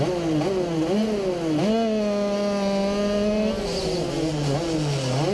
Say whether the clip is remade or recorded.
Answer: recorded